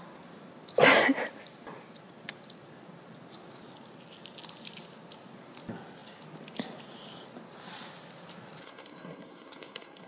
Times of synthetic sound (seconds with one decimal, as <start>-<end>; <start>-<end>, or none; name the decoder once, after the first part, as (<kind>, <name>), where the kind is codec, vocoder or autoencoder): 8.6-10.1 (codec, SNAC)